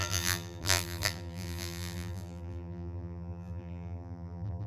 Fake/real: fake